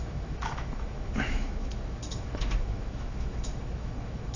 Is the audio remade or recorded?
remade